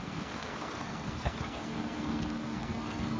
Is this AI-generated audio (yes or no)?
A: yes